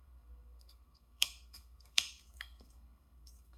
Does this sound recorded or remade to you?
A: remade